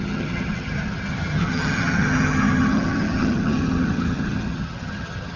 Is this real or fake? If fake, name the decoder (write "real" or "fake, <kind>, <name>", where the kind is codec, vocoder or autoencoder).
fake, vocoder, HiFi-GAN